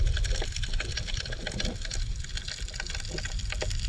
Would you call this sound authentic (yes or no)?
yes